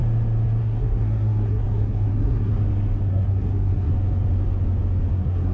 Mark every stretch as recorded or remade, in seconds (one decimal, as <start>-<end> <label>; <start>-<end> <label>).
0.0-0.6 recorded; 0.6-2.5 remade; 2.5-3.1 recorded; 3.1-3.9 remade; 3.9-5.1 recorded; 5.1-5.5 remade